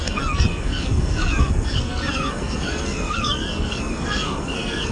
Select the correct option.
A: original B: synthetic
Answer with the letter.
B